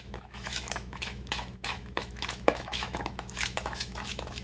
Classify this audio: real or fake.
fake